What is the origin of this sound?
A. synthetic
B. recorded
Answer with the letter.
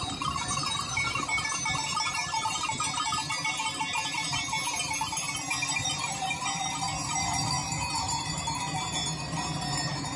B